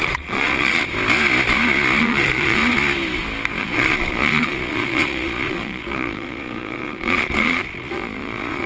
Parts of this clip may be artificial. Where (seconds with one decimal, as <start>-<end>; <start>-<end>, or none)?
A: 0.0-0.8; 2.0-2.6; 3.6-8.7